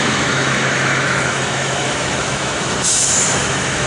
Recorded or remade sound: remade